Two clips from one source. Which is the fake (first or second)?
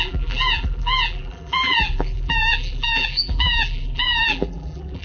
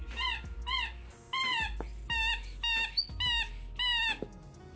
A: first